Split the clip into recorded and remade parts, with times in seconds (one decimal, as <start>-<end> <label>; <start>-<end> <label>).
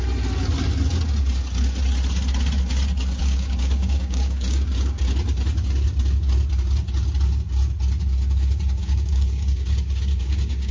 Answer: 0.0-3.2 recorded; 3.2-5.0 remade; 5.0-8.8 recorded; 8.8-10.7 remade